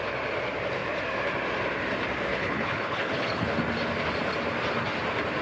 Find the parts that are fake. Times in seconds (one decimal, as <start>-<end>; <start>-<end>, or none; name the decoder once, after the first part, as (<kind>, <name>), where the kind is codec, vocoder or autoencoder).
2.3-3.5 (codec, HILCodec)